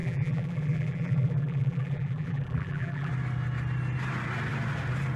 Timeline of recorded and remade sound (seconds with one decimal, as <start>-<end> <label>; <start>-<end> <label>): 0.0-3.1 remade; 3.1-5.2 recorded